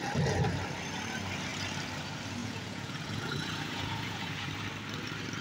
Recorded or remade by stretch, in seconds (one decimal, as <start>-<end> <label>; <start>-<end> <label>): 0.0-2.4 recorded; 2.4-4.5 remade; 4.5-5.4 recorded